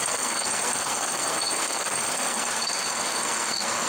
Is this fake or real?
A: fake